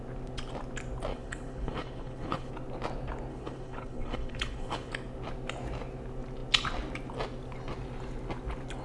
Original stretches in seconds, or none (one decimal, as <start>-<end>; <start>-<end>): 0.0-1.1; 2.5-3.3; 4.9-8.8